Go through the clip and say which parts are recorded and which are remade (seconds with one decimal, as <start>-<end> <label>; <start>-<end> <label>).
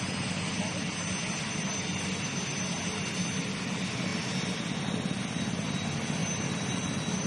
0.0-7.3 recorded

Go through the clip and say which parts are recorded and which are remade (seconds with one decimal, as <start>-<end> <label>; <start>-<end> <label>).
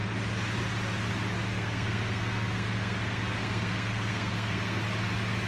0.0-1.5 recorded; 1.5-4.8 remade; 4.8-5.5 recorded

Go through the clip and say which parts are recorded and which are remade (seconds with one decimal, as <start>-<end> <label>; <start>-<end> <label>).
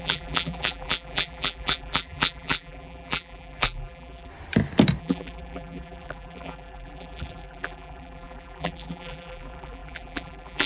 0.0-4.3 remade; 4.3-5.0 recorded; 5.0-10.7 remade